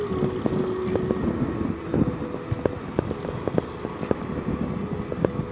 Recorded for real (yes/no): yes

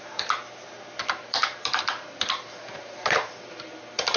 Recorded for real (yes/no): no